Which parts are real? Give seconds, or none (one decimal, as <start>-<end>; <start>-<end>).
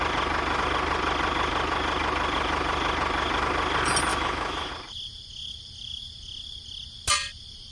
0.0-4.1; 4.7-7.7